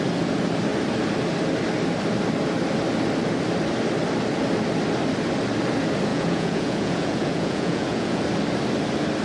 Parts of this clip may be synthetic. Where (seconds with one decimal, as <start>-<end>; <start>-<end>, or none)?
6.1-8.2

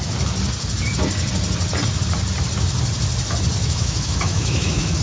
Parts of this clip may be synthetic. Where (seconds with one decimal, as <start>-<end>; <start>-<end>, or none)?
3.6-5.0

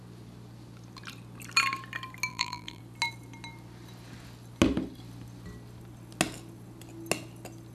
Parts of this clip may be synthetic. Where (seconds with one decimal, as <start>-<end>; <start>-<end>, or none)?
2.3-2.8

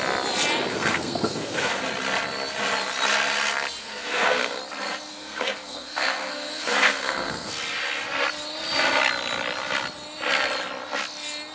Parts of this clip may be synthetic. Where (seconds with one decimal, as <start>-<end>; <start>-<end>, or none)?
0.7-1.8; 3.8-4.6; 5.1-7.5

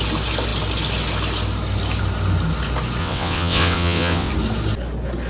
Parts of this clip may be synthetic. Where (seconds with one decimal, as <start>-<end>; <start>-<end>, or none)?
3.0-4.3